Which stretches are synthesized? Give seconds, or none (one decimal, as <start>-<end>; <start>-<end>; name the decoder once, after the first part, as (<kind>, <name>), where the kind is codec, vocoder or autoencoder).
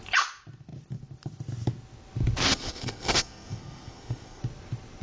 2.5-4.4 (codec, SNAC)